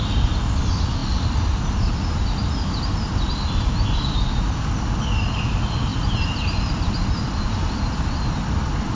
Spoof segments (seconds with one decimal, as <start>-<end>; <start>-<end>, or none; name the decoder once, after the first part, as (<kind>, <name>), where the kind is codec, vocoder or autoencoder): none